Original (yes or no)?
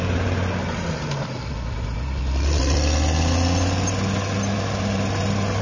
yes